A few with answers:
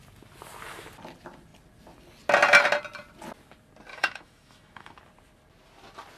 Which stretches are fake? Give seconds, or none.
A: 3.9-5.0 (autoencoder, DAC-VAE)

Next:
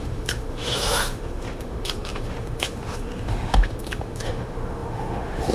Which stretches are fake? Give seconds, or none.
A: 0.0-5.5 (autoencoder, DAC-VAE)

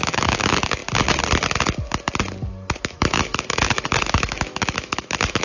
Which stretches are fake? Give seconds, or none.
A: 0.0-0.8 (autoencoder, DAC-VAE); 2.8-5.4

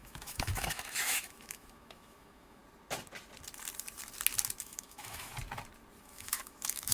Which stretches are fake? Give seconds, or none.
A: 0.0-2.6 (autoencoder, DAC-VAE); 4.6-5.3; 6.0-6.9

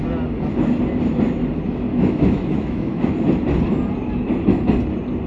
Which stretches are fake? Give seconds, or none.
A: 1.9-3.1 (autoencoder, DAC-VAE)